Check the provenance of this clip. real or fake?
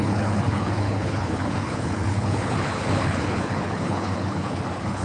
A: fake